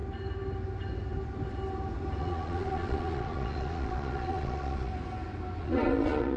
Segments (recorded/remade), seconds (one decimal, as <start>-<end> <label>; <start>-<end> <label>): 0.0-2.2 recorded; 2.2-4.9 remade; 4.9-5.6 recorded; 5.6-6.4 remade